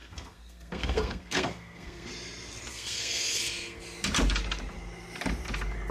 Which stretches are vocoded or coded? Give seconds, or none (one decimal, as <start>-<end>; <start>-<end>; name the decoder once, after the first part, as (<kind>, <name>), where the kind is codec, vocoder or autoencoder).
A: 0.0-2.1 (codec, SNAC); 2.7-3.8